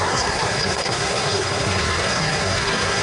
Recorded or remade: remade